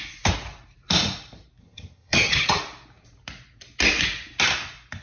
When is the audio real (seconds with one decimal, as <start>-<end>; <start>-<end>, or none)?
0.0-1.6; 2.6-5.0